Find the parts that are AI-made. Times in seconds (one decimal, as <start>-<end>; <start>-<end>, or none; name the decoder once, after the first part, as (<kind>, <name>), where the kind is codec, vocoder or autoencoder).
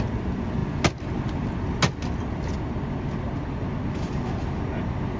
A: none